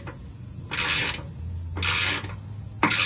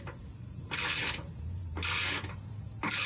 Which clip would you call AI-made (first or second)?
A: second